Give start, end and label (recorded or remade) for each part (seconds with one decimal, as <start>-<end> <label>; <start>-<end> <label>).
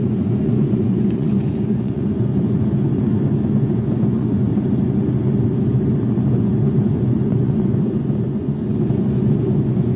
0.0-4.5 remade; 4.5-6.3 recorded; 6.3-10.0 remade